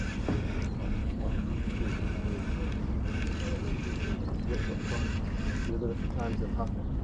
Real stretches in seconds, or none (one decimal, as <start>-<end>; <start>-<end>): 0.0-1.0; 1.8-7.0